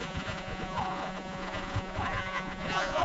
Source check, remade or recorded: remade